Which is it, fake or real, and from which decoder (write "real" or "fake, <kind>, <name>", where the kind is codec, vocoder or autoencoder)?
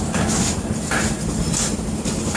real